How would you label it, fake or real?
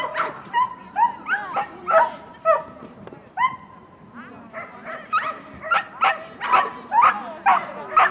real